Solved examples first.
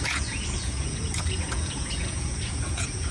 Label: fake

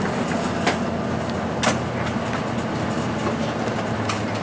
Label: real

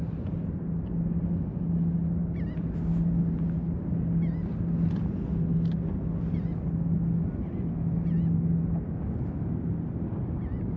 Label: real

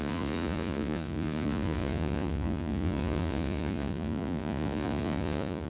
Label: fake